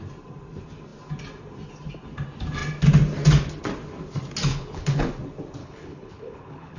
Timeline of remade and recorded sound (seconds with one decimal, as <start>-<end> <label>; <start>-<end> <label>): 0.0-4.5 recorded; 4.5-5.1 remade; 5.1-5.6 recorded; 5.6-6.8 remade